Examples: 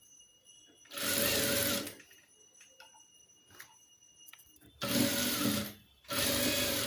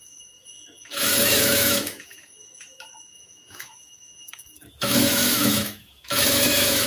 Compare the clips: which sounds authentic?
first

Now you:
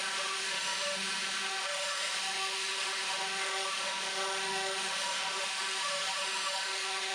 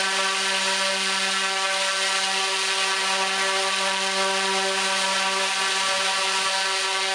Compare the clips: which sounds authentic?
second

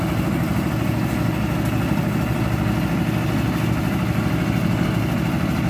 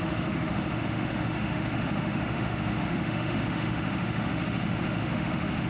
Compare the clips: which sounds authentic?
first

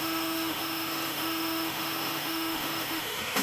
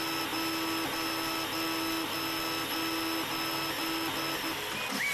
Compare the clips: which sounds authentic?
second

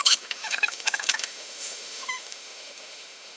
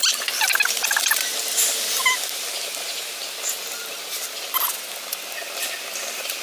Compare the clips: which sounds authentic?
second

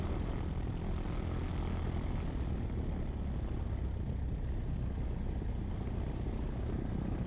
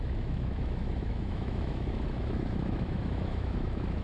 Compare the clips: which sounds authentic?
first